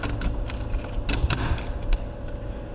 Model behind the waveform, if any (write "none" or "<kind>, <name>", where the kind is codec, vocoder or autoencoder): none